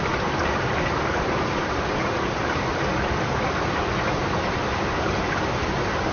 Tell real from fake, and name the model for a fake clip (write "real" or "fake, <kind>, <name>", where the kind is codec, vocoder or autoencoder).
real